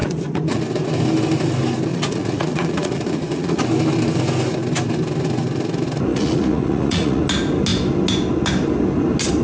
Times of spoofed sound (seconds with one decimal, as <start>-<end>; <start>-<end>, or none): 0.0-0.6; 1.9-3.6; 6.1-7.2

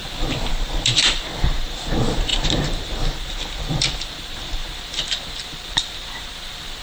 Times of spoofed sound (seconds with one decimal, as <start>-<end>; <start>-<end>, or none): 0.5-6.8